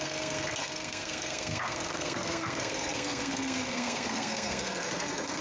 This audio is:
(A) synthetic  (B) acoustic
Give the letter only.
A